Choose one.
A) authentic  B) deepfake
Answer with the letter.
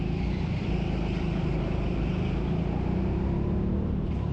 A